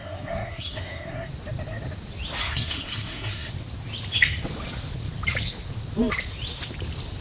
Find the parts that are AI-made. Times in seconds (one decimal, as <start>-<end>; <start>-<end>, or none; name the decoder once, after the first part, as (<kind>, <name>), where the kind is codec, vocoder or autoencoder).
0.0-1.3 (codec, SNAC); 2.4-3.5